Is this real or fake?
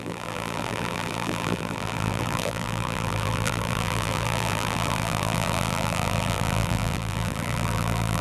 fake